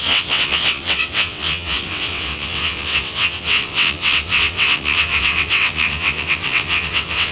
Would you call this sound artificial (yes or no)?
yes